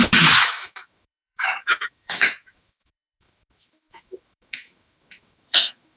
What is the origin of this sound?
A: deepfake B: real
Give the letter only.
A